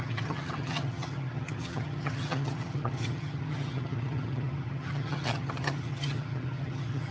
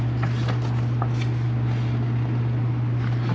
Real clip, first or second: second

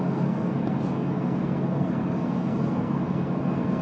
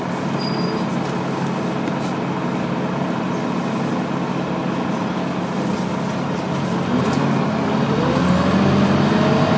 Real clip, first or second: second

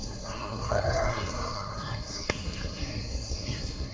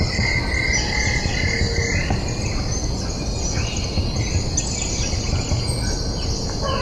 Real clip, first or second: second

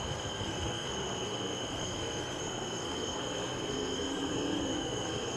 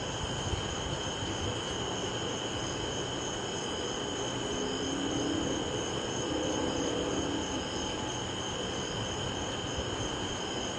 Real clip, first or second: second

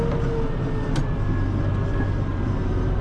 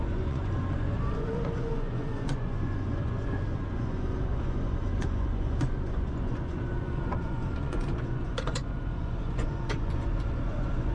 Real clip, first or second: first